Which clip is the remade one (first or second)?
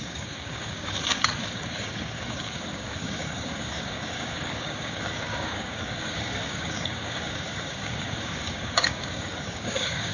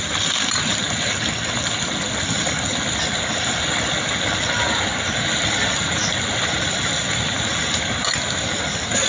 first